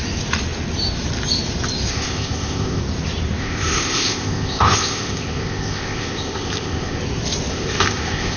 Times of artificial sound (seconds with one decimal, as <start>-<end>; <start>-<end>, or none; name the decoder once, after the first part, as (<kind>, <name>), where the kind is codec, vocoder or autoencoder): 1.9-2.8 (codec, ZipCodec); 3.4-7.0; 7.5-8.4